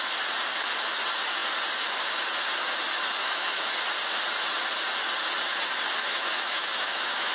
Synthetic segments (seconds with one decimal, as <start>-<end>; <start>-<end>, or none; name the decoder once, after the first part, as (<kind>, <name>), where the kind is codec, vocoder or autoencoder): 3.2-3.7 (autoencoder, DAC-VAE); 6.0-7.3